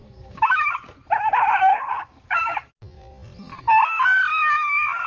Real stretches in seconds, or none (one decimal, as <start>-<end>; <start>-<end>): 0.6-1.7; 2.4-5.1